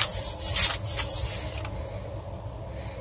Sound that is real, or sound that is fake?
real